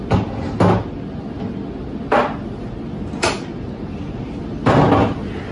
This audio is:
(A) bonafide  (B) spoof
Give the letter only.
A